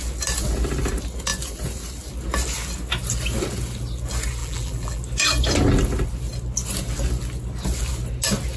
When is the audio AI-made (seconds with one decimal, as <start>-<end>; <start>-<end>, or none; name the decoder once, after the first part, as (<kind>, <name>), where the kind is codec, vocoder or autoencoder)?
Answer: 4.4-5.0 (vocoder, BigVGAN v2)